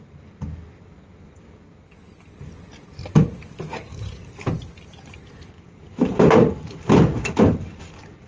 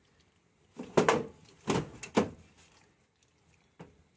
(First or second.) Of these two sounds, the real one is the second